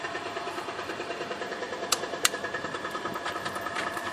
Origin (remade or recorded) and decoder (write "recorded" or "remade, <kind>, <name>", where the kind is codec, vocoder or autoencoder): remade, vocoder, BigVGAN v2